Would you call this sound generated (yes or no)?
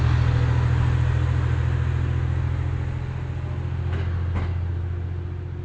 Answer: no